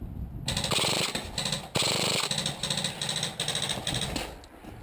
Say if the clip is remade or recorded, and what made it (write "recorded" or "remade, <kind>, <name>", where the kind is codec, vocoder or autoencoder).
recorded